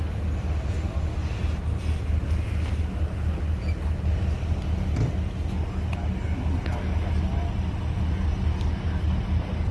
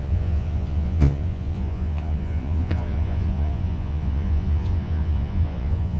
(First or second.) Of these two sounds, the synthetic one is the second